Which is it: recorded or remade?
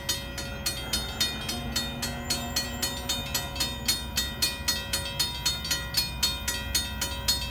recorded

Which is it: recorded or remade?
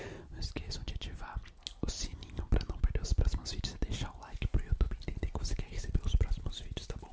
recorded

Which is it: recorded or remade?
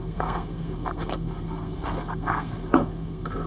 remade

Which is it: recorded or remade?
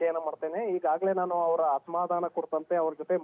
recorded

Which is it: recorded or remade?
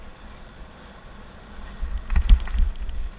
recorded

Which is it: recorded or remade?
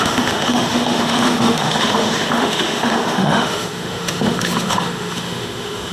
remade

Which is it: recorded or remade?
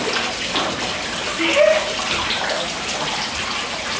recorded